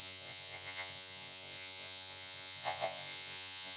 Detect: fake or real fake